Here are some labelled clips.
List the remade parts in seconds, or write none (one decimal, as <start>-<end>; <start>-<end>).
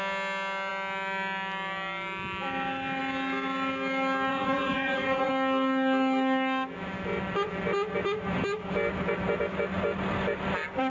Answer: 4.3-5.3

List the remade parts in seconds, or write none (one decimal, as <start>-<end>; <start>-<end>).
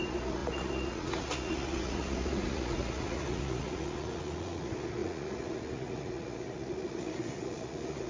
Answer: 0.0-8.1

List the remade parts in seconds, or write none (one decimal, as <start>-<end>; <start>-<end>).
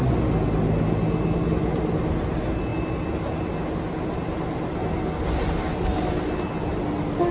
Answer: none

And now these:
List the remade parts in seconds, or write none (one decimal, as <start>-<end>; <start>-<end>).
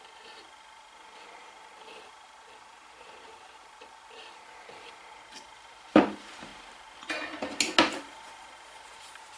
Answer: 0.0-6.5; 7.9-9.4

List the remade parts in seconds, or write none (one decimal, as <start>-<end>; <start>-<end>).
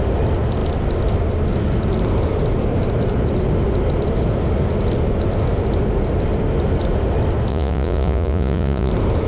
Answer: 7.5-8.9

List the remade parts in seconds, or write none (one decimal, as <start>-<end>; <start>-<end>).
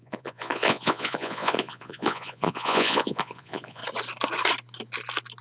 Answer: 0.0-3.8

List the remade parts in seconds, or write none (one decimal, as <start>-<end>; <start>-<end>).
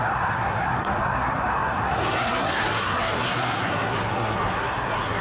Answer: 0.0-5.2